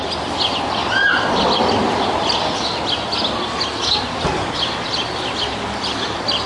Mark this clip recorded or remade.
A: recorded